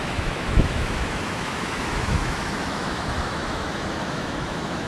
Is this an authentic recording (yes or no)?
no